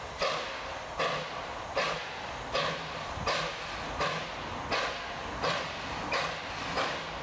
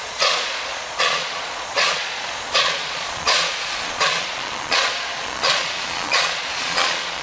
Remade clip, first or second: second